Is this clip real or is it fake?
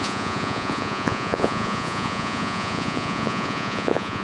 fake